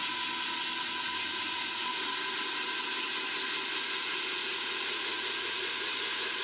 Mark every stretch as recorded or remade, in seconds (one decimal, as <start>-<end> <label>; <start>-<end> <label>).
0.0-3.8 recorded; 3.8-6.4 remade